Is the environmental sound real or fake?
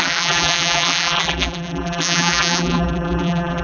fake